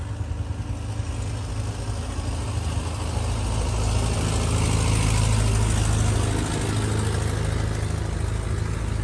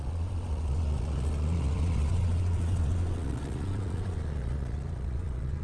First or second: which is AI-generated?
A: second